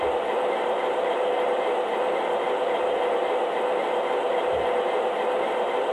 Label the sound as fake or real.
fake